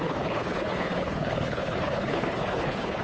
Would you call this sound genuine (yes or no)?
no